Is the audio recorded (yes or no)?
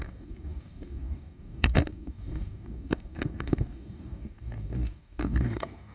no